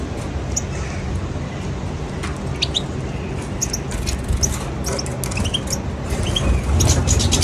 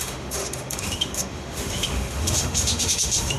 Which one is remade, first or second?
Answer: second